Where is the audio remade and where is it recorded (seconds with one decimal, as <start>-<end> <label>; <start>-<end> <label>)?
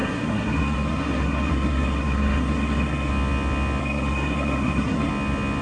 0.0-3.1 remade; 3.1-3.8 recorded; 3.8-5.1 remade; 5.1-5.6 recorded